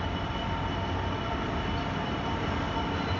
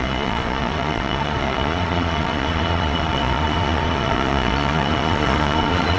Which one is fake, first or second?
second